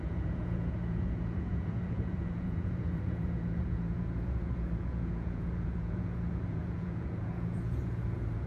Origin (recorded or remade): remade